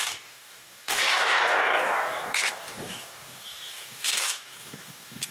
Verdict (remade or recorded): remade